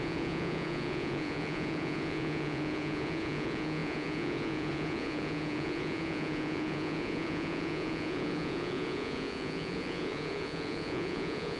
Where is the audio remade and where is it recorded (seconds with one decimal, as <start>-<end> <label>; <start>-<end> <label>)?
0.0-11.6 remade